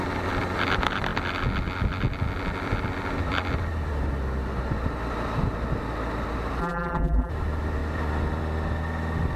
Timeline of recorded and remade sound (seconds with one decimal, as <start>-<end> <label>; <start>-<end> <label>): 0.0-6.6 recorded; 6.6-7.3 remade; 7.3-9.4 recorded